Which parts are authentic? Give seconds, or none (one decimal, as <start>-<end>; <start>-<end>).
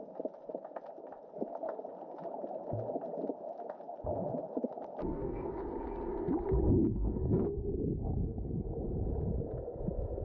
0.0-5.0; 5.6-6.8; 7.6-10.2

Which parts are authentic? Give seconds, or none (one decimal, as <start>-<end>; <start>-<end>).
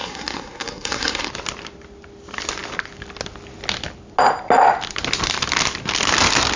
1.3-6.6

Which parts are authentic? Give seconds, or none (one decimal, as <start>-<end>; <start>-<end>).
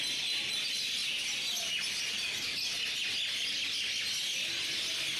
0.0-5.2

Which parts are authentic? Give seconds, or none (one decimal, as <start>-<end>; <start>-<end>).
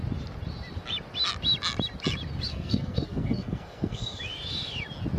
0.0-2.5; 4.2-5.2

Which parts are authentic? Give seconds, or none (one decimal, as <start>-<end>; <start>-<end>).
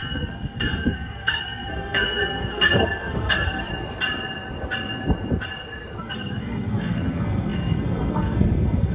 3.7-6.0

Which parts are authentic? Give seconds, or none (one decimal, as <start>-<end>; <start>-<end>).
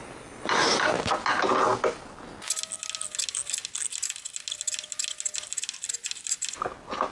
0.0-7.1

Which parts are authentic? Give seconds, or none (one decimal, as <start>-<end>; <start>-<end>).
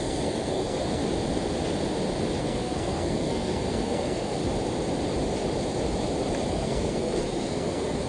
1.0-2.4; 4.4-6.5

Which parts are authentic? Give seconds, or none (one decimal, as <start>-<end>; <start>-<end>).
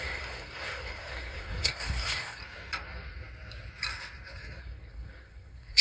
2.4-4.6